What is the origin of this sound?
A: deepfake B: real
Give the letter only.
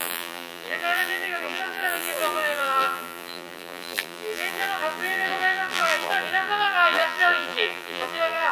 A